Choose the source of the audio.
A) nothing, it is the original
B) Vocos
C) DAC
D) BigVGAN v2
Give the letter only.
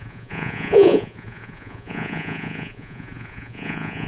B